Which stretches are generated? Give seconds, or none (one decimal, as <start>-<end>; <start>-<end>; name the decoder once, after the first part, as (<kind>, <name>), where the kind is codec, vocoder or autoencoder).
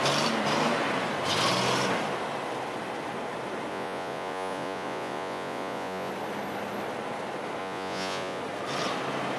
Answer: 3.7-6.1 (vocoder, Vocos); 7.6-8.4